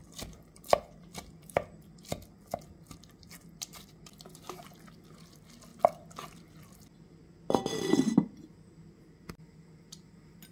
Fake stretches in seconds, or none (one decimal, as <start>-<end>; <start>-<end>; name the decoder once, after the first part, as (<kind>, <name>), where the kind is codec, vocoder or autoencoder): none